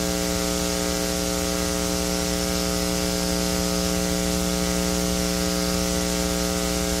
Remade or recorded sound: recorded